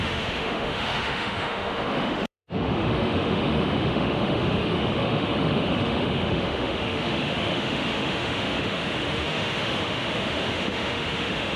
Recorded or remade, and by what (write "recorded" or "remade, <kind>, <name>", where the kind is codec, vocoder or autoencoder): remade, autoencoder, DAC-VAE